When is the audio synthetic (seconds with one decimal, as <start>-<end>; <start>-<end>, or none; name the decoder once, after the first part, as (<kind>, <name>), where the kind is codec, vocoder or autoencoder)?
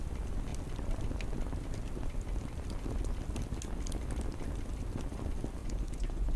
5.6-6.4 (vocoder, Vocos)